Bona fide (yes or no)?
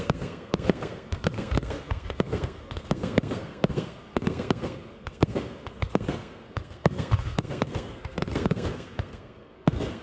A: no